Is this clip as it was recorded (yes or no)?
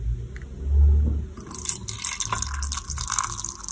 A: yes